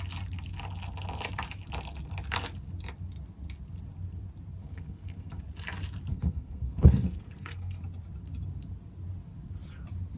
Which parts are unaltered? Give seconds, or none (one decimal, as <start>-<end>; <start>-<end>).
0.0-4.6; 5.4-6.1; 7.8-10.2